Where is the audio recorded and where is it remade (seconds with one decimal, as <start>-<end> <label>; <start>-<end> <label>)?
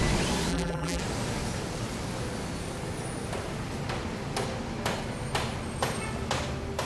0.0-0.5 recorded; 0.5-1.0 remade; 1.0-6.9 recorded